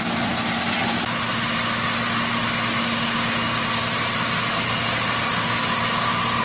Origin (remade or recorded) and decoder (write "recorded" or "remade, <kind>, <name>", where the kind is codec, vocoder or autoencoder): recorded